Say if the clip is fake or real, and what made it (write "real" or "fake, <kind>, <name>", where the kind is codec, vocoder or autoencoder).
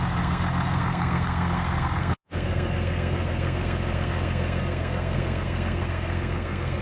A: fake, codec, SNAC